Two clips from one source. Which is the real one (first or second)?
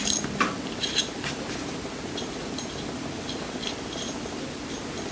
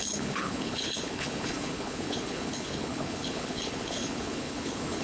first